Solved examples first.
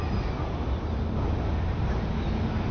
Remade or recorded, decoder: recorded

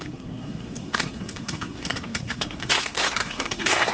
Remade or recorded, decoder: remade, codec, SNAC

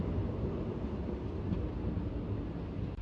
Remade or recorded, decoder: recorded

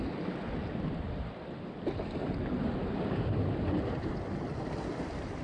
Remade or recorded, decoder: recorded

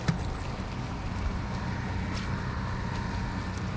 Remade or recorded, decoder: recorded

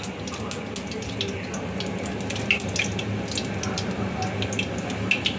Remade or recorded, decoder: recorded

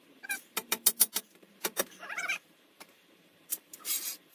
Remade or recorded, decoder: remade, vocoder, BigVGAN v2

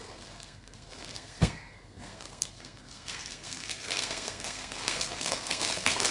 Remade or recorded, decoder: remade, codec, SNAC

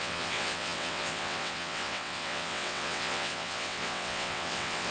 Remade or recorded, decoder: remade, vocoder, WaveNeXt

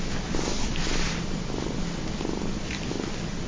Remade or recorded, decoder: recorded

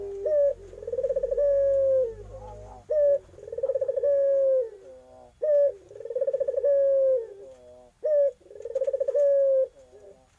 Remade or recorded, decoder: recorded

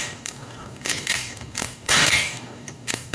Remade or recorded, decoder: remade, codec, DAC